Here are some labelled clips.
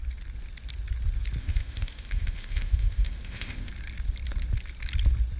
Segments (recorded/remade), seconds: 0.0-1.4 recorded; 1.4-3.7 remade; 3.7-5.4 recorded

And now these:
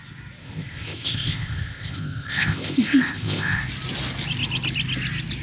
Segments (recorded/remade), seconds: 0.0-0.4 recorded; 0.4-3.6 remade; 3.6-5.4 recorded

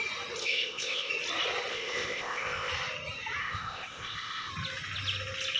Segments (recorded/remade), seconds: 0.0-0.4 recorded; 0.4-1.1 remade; 1.1-1.7 recorded; 1.7-2.7 remade; 2.7-3.4 recorded; 3.4-4.5 remade; 4.5-5.6 recorded

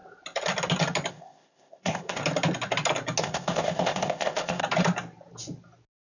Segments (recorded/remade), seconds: 0.0-1.1 recorded; 1.1-2.2 remade; 2.2-3.2 recorded; 3.2-4.6 remade; 4.6-6.1 recorded

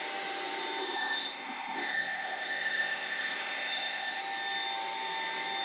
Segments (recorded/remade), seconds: 0.0-0.8 recorded; 0.8-4.2 remade; 4.2-5.6 recorded

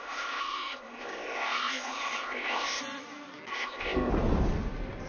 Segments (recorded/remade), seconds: 0.0-2.8 remade; 2.8-3.5 recorded; 3.5-4.1 remade; 4.1-5.1 recorded

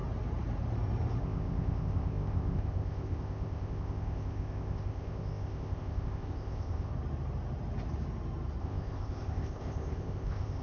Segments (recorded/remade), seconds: 0.0-1.2 recorded; 1.2-6.9 remade; 6.9-8.6 recorded; 8.6-10.6 remade